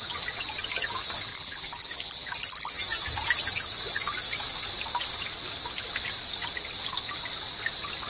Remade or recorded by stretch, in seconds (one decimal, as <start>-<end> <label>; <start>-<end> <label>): 0.0-1.3 recorded; 1.3-2.8 remade; 2.8-8.1 recorded